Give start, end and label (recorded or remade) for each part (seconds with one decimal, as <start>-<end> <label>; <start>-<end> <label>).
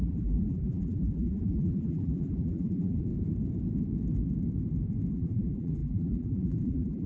0.0-3.1 remade; 3.1-5.1 recorded; 5.1-7.1 remade